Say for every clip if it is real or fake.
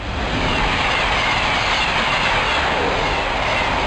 real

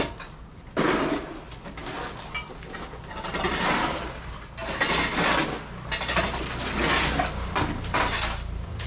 real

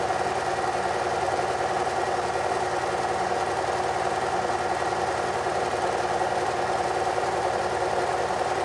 real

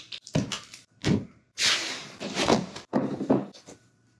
fake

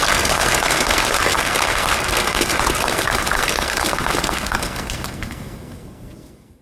fake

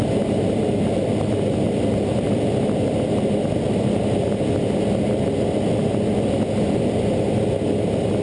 real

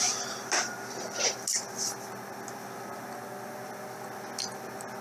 real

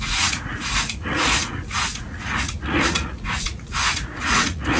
fake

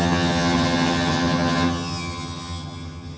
fake